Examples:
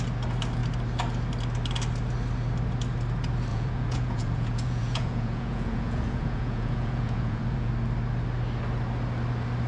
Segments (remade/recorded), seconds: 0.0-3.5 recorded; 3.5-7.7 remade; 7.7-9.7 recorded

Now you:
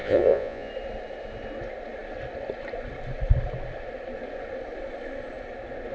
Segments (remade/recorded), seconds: 0.0-0.7 remade; 0.7-5.9 recorded

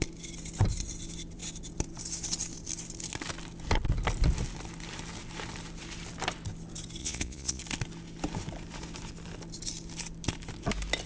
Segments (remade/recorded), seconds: 0.0-7.0 recorded; 7.0-7.6 remade; 7.6-11.1 recorded

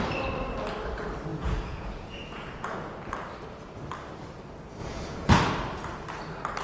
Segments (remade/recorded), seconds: 0.0-1.3 recorded; 1.3-3.0 remade; 3.0-4.8 recorded; 4.8-5.3 remade; 5.3-6.6 recorded

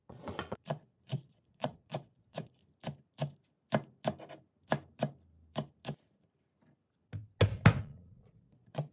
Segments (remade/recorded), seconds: 0.0-2.6 remade; 2.6-7.8 recorded; 7.8-8.9 remade